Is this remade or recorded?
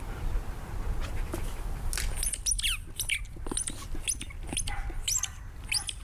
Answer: recorded